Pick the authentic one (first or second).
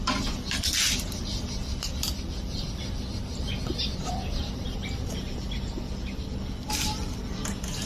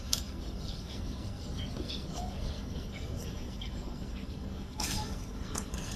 first